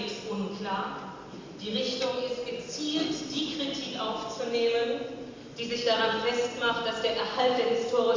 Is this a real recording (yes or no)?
yes